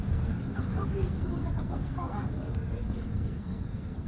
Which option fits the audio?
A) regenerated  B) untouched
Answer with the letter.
A